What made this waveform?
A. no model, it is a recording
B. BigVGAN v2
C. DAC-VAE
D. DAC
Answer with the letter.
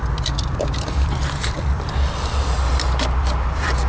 B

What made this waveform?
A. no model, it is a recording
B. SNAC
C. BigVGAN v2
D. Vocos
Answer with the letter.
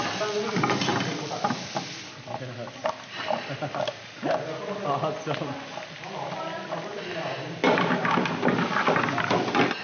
A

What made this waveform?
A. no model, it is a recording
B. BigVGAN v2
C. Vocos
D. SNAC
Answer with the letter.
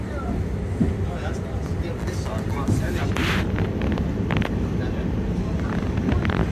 A